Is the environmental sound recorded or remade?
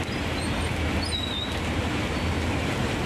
recorded